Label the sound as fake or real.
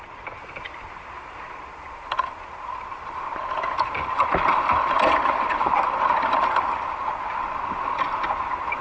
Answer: fake